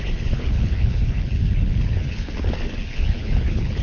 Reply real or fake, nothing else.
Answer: fake